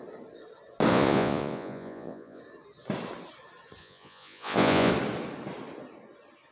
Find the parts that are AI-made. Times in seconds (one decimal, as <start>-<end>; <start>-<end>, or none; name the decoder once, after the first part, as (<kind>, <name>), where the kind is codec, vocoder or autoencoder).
0.9-2.4 (vocoder, Vocos); 3.8-4.9